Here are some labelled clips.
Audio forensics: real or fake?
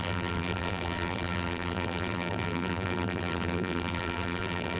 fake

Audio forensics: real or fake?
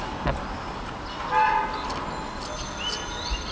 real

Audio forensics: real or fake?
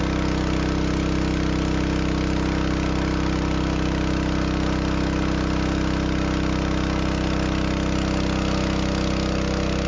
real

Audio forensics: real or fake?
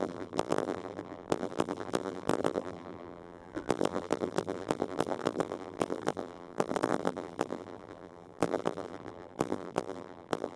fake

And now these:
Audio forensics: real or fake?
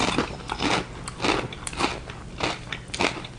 real